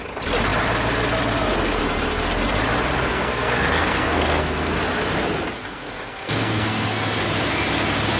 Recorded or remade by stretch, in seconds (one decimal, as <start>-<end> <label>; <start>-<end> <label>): 0.0-3.1 recorded; 3.1-4.8 remade; 4.8-5.6 recorded; 5.6-7.2 remade; 7.2-8.2 recorded